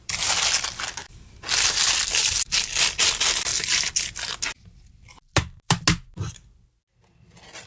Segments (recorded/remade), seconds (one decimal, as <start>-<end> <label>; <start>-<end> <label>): 0.0-7.7 recorded